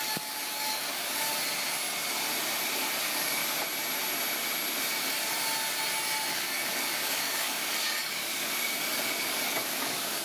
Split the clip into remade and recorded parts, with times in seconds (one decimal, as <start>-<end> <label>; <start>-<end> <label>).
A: 0.0-1.3 remade; 1.3-3.0 recorded; 3.0-3.4 remade; 3.4-6.3 recorded; 6.3-10.2 remade